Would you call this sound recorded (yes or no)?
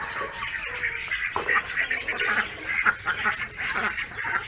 yes